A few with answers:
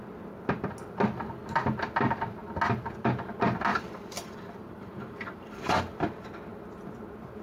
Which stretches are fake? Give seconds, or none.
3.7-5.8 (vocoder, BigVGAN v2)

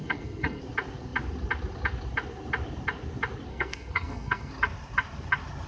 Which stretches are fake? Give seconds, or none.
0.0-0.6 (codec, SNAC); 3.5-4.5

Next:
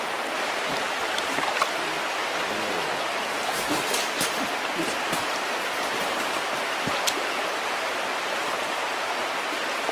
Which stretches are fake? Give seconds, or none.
none

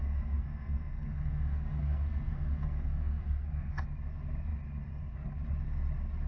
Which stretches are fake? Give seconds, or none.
0.0-3.8 (codec, SNAC)

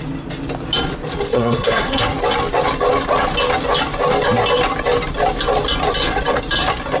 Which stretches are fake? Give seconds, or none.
1.3-2.0 (codec, SNAC)

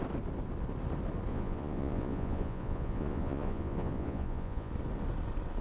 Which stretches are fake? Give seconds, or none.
1.3-4.7 (vocoder, Vocos)

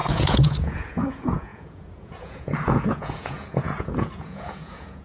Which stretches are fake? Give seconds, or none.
0.0-5.0 (vocoder, Vocos)

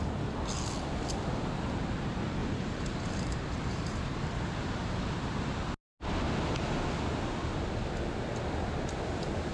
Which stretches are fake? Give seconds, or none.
2.4-5.0 (vocoder, BigVGAN v2)